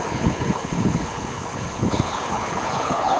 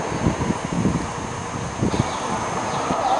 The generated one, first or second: first